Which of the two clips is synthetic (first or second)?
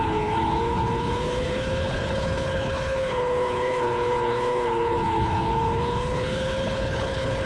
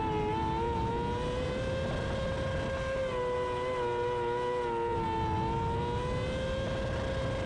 first